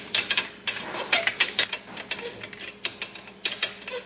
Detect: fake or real real